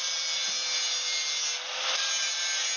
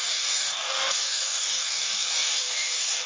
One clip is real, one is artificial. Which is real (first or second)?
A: first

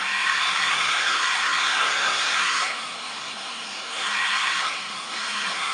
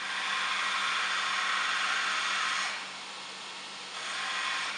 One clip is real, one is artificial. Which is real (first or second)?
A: second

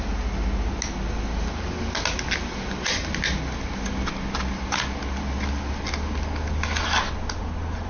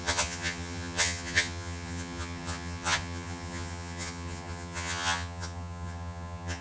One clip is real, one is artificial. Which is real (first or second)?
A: first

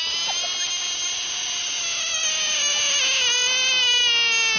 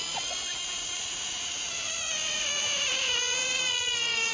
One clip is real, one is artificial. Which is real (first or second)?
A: first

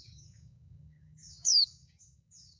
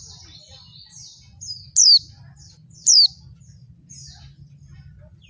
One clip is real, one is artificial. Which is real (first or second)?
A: second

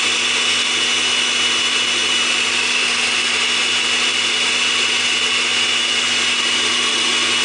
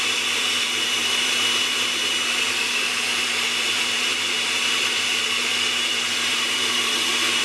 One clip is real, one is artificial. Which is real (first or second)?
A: first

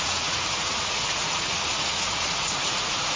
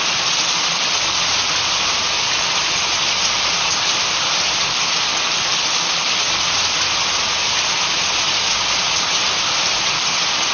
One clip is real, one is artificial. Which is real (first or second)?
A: second